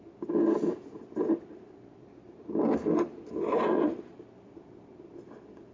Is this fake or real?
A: real